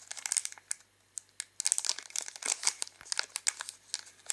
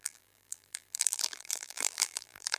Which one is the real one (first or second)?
first